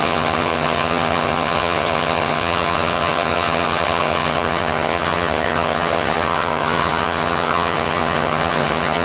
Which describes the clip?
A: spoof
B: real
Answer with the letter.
A